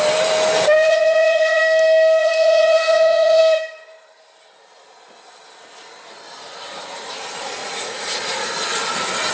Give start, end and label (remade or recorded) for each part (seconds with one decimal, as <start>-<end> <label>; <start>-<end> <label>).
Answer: 0.0-0.9 recorded; 0.9-1.6 remade; 1.6-2.2 recorded; 2.2-3.4 remade; 3.4-7.6 recorded; 7.6-8.2 remade; 8.2-9.3 recorded